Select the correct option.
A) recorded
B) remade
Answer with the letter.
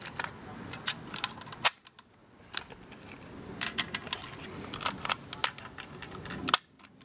A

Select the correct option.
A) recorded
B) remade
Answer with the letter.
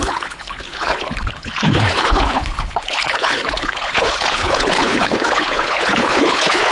B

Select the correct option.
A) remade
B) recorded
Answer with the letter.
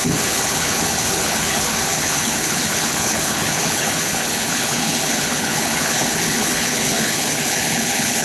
A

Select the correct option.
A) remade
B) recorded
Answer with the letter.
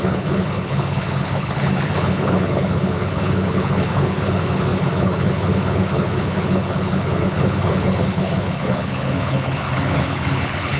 A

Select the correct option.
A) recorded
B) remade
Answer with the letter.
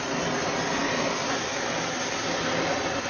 A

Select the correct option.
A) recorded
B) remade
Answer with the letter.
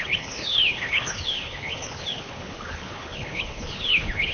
B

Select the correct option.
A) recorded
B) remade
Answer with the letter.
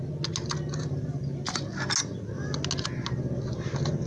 A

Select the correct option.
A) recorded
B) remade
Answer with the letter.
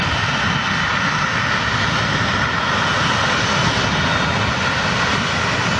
A